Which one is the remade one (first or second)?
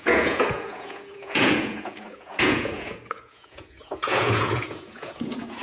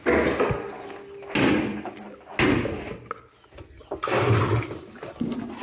first